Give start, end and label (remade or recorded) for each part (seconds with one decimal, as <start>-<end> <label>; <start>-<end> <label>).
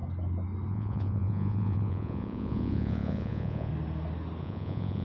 0.0-0.7 recorded; 0.7-3.7 remade; 3.7-4.4 recorded; 4.4-5.0 remade